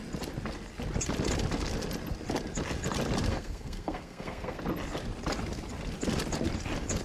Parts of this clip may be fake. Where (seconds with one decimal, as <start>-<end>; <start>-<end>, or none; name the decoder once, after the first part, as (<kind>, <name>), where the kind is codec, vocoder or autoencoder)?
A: 3.3-4.6 (codec, SNAC)